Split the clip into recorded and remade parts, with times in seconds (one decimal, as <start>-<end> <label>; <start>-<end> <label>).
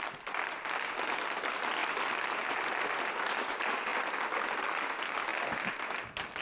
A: 0.0-6.4 recorded